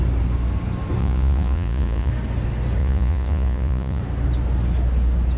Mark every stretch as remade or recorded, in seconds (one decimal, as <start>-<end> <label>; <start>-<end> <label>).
0.0-1.0 recorded; 1.0-2.1 remade; 2.1-2.8 recorded; 2.8-4.0 remade; 4.0-5.4 recorded